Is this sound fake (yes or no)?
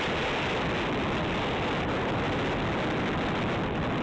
no